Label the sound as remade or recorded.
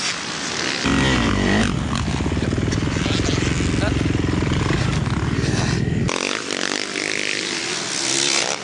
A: recorded